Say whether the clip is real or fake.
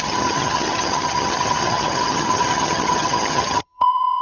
fake